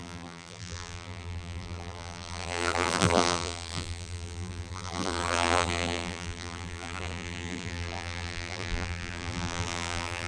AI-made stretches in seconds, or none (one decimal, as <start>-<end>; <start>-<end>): 0.0-10.3